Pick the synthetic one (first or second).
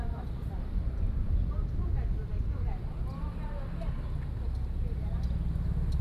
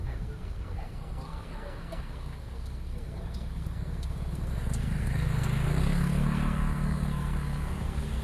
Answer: second